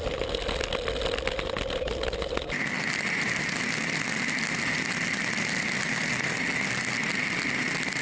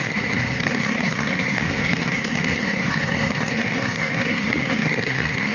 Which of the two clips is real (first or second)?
first